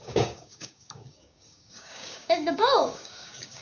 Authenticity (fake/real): fake